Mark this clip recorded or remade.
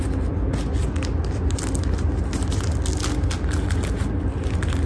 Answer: recorded